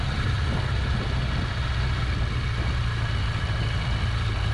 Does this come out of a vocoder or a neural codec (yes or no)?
no